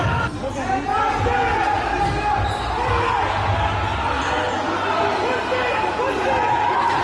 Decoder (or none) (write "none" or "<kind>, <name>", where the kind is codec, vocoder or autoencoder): none